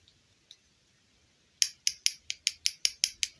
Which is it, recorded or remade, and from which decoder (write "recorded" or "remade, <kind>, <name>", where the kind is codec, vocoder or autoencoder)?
recorded